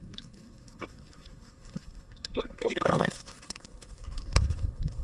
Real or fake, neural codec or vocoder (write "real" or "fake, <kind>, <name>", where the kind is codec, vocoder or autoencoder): fake, codec, SNAC